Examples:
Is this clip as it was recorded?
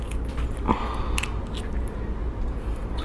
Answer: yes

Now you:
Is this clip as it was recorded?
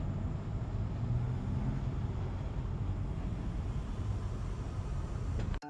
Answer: yes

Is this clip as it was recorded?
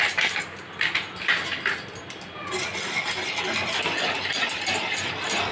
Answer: yes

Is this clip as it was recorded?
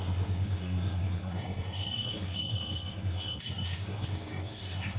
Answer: no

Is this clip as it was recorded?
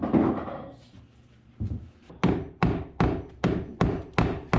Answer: yes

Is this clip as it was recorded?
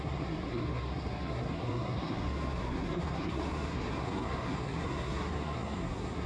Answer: no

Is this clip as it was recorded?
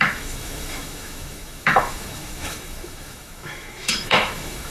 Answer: no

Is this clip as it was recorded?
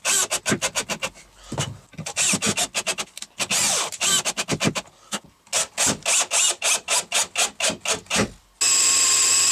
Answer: yes